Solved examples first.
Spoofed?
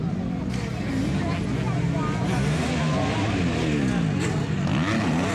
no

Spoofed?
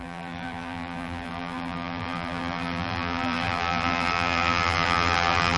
yes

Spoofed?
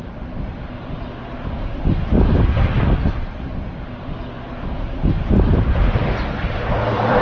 yes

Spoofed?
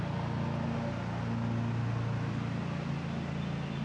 no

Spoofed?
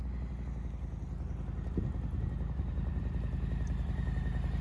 no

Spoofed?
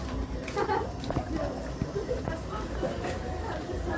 yes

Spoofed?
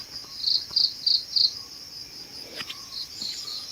no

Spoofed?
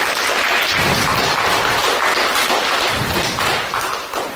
no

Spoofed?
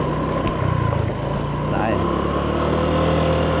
no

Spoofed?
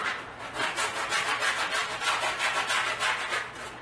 yes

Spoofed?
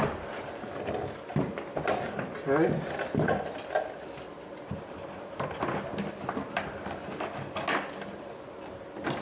no